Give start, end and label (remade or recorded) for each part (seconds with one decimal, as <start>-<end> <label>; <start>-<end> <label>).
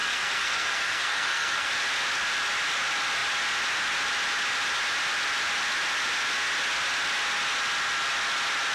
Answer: 0.0-1.7 remade; 1.7-8.7 recorded